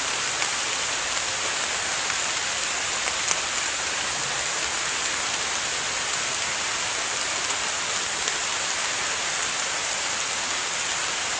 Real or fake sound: real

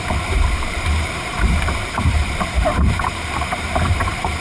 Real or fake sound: fake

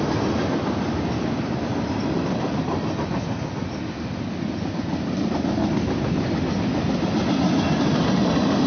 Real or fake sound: real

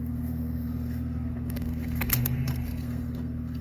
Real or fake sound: fake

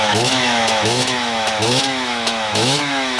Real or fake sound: fake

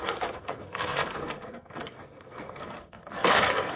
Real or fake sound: fake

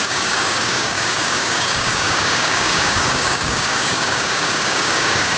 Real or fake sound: fake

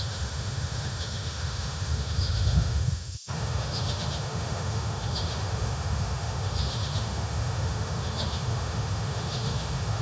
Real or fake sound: fake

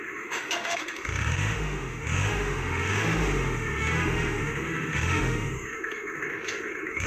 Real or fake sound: fake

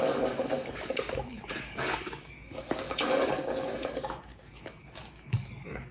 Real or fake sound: fake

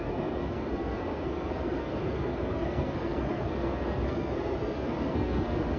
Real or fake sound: fake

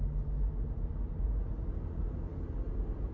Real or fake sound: real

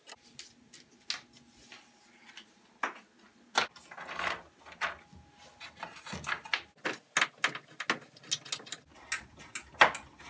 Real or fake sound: real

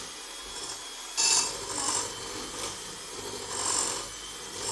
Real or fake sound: real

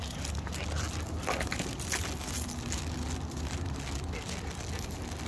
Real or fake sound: real